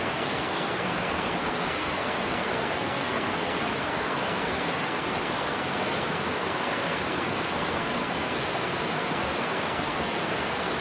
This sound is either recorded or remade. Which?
remade